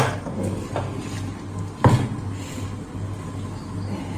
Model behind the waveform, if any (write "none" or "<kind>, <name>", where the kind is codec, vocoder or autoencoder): none